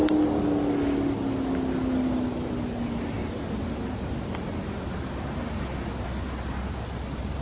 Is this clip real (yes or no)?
yes